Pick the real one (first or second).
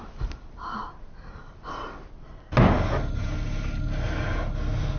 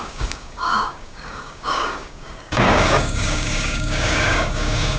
first